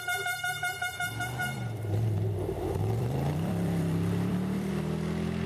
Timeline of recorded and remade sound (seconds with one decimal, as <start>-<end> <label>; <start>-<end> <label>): 0.0-1.4 recorded; 1.4-4.7 remade; 4.7-5.5 recorded